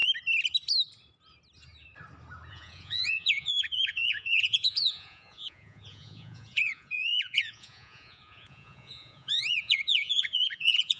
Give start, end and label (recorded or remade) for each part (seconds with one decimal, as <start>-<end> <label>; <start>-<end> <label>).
0.0-2.5 recorded; 2.5-11.0 remade

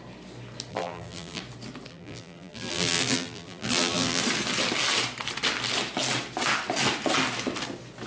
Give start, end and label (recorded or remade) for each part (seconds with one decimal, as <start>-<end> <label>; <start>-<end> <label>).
0.0-0.7 recorded; 0.7-1.4 remade; 1.4-1.9 recorded; 1.9-4.2 remade; 4.2-8.1 recorded

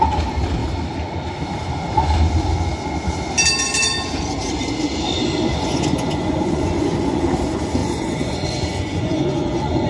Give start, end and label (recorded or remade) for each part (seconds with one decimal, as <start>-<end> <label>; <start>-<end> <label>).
0.0-5.5 recorded; 5.5-7.2 remade; 7.2-7.8 recorded; 7.8-9.9 remade